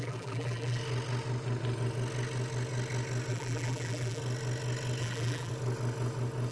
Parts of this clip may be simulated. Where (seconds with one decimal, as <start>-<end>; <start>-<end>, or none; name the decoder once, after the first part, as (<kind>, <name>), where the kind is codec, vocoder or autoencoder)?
0.0-0.8 (vocoder, BigVGAN v2); 3.3-4.2; 5.0-5.5